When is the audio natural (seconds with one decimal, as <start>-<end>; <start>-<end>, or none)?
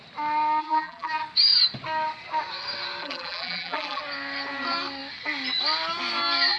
0.0-0.6; 1.1-3.0; 4.0-6.6